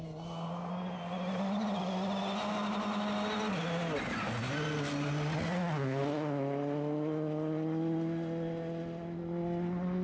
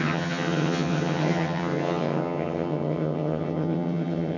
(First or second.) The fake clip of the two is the second